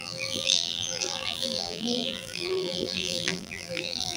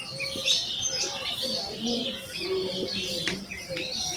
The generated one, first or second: first